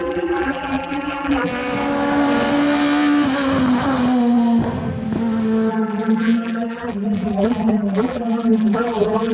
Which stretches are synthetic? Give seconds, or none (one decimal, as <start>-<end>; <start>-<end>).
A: 0.0-1.5; 5.7-9.3